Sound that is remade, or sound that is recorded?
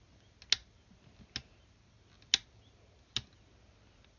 recorded